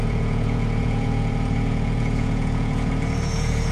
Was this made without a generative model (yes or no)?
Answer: no